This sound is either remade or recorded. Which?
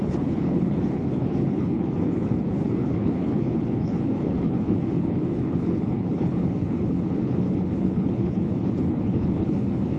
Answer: remade